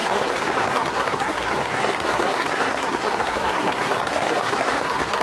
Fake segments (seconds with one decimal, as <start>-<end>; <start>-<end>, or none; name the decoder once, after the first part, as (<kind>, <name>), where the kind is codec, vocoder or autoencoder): 0.0-5.2 (codec, SNAC)